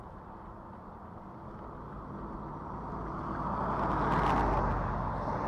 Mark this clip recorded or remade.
recorded